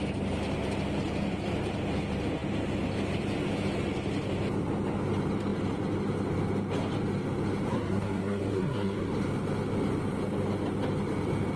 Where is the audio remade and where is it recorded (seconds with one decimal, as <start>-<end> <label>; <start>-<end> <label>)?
0.0-7.7 recorded; 7.7-9.1 remade; 9.1-11.6 recorded